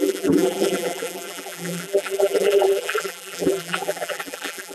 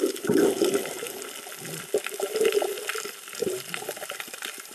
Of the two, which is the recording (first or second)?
second